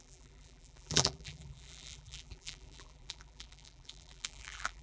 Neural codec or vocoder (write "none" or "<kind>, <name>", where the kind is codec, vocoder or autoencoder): vocoder, BigVGAN v2